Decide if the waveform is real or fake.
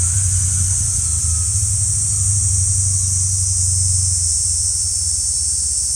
real